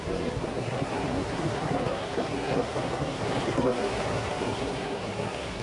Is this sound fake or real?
fake